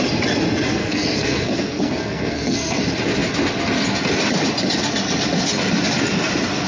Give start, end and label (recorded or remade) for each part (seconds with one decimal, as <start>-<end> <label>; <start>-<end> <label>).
0.0-0.8 recorded; 0.8-2.8 remade; 2.8-6.7 recorded